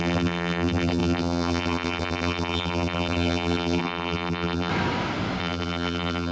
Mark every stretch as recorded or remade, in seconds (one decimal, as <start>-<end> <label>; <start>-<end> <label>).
0.0-4.7 remade; 4.7-5.4 recorded; 5.4-6.3 remade